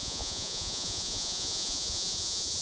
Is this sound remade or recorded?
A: remade